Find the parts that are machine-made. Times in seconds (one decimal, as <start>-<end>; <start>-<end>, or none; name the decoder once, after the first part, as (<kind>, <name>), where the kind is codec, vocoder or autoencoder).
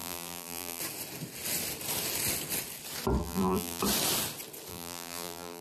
0.0-0.8 (vocoder, BigVGAN v2); 3.2-3.8; 4.7-5.6